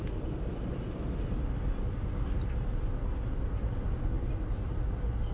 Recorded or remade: recorded